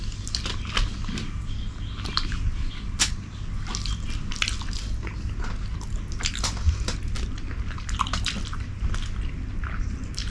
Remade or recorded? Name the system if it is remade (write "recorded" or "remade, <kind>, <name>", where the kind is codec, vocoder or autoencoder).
recorded